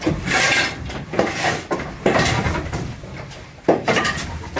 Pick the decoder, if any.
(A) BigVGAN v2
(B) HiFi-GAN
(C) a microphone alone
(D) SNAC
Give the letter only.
A